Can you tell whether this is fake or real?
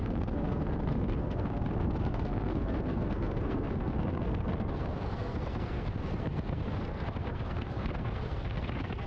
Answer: fake